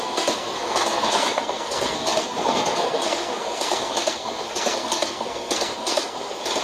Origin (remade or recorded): remade